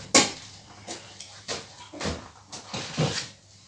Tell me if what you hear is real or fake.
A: real